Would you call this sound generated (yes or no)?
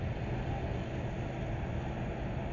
no